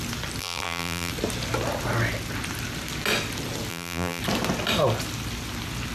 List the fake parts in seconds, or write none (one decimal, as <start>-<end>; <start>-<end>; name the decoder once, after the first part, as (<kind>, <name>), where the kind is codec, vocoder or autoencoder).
0.4-1.1 (vocoder, BigVGAN v2); 3.7-4.2